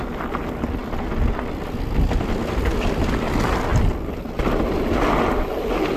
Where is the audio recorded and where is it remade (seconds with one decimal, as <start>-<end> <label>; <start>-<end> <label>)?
0.0-6.0 recorded